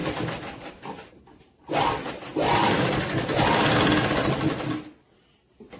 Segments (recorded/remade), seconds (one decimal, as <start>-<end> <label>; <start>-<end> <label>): 0.0-5.8 recorded